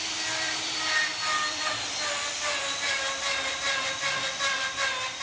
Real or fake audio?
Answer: fake